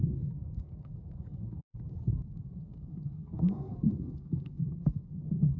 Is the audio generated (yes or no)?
yes